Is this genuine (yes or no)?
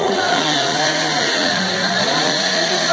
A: no